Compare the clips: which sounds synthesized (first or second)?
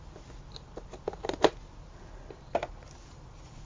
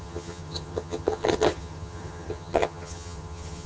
second